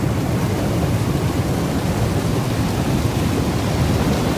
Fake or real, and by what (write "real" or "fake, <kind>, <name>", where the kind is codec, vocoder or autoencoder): real